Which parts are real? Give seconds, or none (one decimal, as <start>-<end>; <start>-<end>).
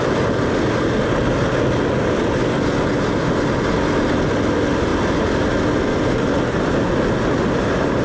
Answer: 0.0-8.0